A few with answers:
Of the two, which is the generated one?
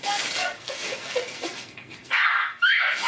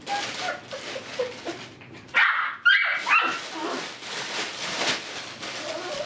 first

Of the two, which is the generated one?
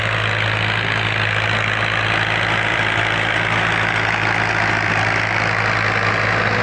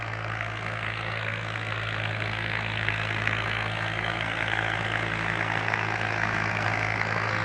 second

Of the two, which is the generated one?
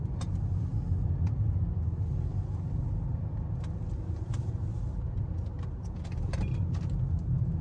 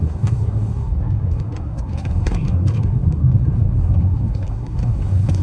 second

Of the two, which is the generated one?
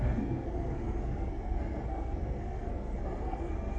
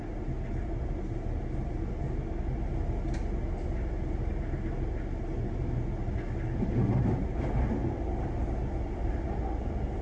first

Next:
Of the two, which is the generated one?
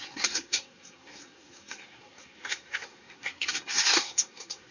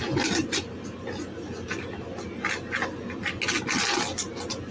first